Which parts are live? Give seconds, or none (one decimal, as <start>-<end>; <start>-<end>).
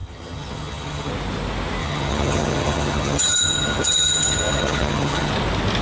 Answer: 1.1-1.8; 5.3-5.8